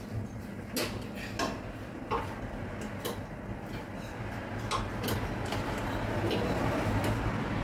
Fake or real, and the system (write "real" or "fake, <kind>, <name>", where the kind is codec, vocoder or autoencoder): real